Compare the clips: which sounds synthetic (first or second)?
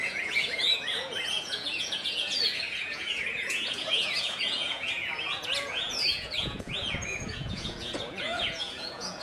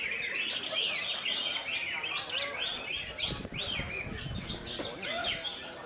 first